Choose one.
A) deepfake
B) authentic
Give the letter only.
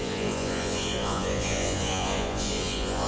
A